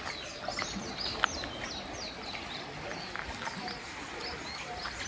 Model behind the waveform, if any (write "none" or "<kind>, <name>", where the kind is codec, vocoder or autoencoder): none